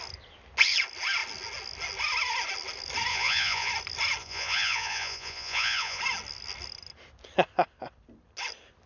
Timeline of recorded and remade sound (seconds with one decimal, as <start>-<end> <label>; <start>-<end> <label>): 0.0-3.1 recorded; 3.1-3.7 remade; 3.7-4.2 recorded; 4.2-6.0 remade; 6.0-8.9 recorded